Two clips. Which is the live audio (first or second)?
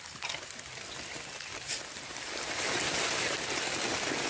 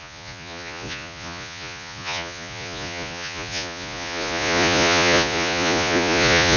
first